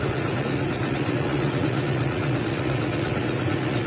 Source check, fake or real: fake